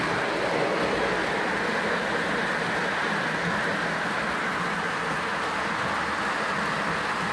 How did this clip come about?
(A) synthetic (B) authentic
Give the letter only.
B